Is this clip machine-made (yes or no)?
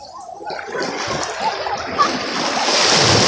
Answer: no